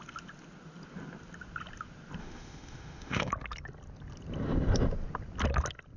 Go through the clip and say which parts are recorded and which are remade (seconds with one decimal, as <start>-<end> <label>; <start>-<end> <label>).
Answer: 0.0-2.2 recorded; 2.2-3.3 remade; 3.3-6.0 recorded